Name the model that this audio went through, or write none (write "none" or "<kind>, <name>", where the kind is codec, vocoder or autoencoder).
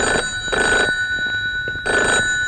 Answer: none